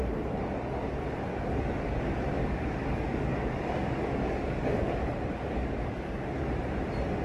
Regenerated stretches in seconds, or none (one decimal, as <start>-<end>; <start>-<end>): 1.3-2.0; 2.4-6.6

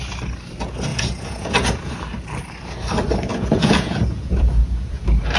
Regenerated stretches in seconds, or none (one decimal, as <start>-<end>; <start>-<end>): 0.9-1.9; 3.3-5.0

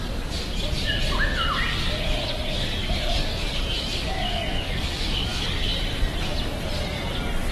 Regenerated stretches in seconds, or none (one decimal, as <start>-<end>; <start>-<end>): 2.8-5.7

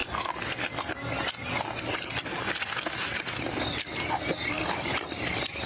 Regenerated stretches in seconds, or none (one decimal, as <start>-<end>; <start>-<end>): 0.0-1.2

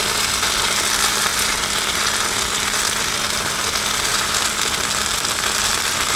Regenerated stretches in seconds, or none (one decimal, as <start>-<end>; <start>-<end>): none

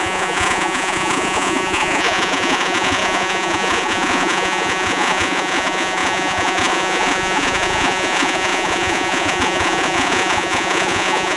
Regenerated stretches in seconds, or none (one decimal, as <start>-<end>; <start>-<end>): 0.0-11.4

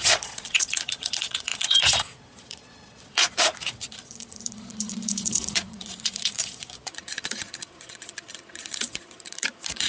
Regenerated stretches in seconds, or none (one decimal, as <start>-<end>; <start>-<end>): 0.0-9.9

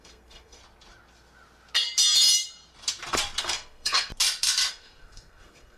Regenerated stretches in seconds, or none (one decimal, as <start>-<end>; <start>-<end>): 0.0-0.6; 3.4-4.1; 4.7-5.8